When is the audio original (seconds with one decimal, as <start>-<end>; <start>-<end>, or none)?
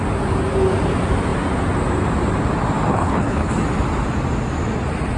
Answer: 0.0-2.9; 3.5-5.2